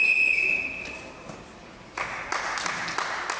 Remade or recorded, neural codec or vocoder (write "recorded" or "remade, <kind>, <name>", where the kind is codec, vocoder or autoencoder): recorded